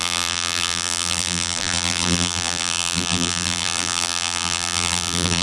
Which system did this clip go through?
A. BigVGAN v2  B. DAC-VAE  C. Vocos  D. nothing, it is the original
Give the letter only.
A